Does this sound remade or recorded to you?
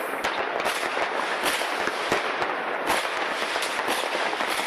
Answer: recorded